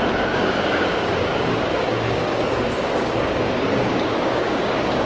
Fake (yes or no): yes